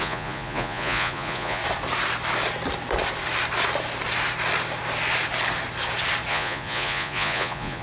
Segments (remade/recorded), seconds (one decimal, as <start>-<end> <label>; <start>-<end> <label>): 0.0-1.6 remade; 1.6-6.3 recorded; 6.3-7.8 remade